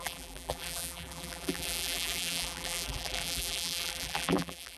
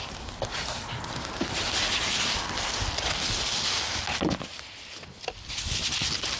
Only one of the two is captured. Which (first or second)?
second